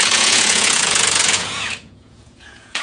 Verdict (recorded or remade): remade